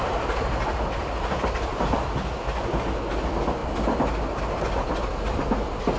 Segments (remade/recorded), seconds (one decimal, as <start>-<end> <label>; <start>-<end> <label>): 0.0-2.3 remade; 2.3-6.0 recorded

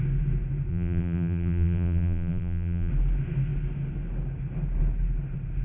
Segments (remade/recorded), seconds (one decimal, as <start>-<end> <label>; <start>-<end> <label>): 0.0-0.7 recorded; 0.7-2.9 remade; 2.9-5.6 recorded

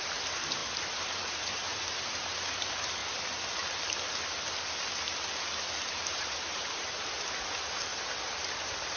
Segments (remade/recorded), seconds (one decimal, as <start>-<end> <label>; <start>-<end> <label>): 0.0-3.0 remade; 3.0-5.9 recorded; 5.9-7.9 remade; 7.9-8.5 recorded; 8.5-9.0 remade

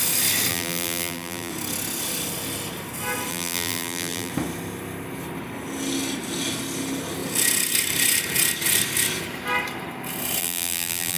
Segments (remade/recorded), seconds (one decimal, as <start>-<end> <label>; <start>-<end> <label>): 0.0-0.5 recorded; 0.5-1.5 remade; 1.5-3.3 recorded; 3.3-4.3 remade; 4.3-10.4 recorded; 10.4-11.2 remade

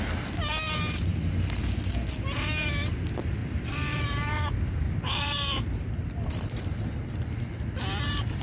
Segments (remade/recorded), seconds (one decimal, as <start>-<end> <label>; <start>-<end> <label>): 0.0-3.4 recorded; 3.4-7.4 remade; 7.4-8.4 recorded

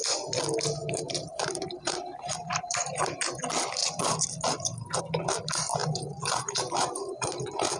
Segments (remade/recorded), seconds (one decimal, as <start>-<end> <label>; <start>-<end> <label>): 0.0-0.8 recorded; 0.8-3.4 remade; 3.4-3.8 recorded; 3.8-5.0 remade; 5.0-5.8 recorded; 5.8-7.8 remade

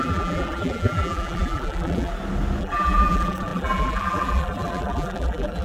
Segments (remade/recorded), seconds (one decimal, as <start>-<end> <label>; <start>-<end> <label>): 0.0-2.1 remade; 2.1-2.6 recorded; 2.6-5.6 remade